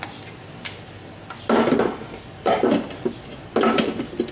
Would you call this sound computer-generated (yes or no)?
no